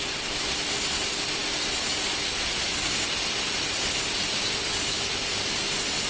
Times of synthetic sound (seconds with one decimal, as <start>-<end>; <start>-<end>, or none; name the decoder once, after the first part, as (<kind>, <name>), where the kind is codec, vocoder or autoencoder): none